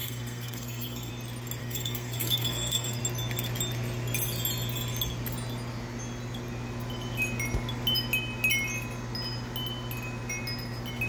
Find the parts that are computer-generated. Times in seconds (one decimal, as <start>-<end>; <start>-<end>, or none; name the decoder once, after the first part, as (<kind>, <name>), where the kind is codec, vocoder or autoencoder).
0.0-1.1 (codec, SNAC); 1.6-3.0